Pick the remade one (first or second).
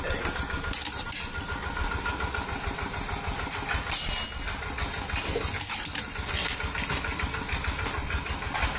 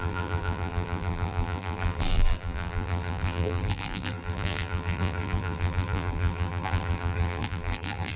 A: second